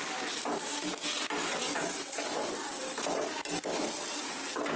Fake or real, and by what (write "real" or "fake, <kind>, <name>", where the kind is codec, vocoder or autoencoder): real